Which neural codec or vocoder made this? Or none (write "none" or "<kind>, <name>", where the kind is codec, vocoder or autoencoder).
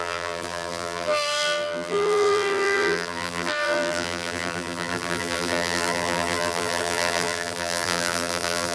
vocoder, BigVGAN v2